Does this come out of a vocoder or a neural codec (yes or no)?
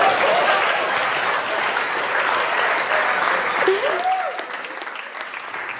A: no